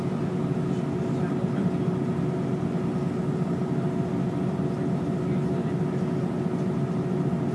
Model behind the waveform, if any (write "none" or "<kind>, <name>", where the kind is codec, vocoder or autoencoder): none